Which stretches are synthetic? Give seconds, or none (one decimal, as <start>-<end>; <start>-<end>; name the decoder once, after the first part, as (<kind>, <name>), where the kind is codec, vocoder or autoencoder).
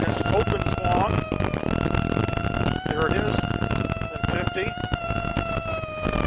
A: none